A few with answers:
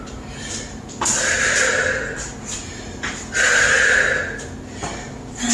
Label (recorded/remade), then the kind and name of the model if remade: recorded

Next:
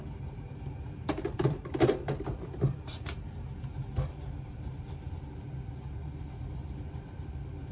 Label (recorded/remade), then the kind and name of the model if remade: remade, vocoder, BigVGAN v2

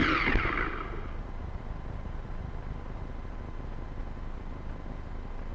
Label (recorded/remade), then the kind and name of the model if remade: recorded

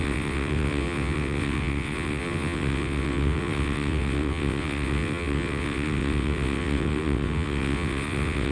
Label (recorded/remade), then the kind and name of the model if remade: remade, vocoder, WaveNeXt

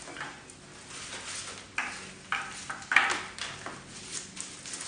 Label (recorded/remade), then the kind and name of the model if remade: recorded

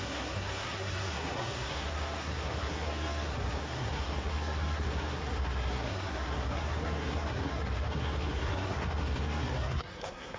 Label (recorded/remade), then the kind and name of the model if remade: remade, codec, SNAC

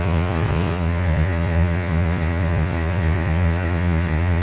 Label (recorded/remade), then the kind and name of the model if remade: remade, vocoder, Vocos